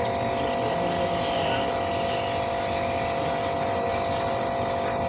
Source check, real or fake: real